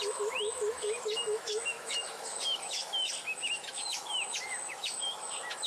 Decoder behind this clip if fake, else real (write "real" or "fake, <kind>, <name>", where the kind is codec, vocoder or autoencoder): fake, autoencoder, DAC-VAE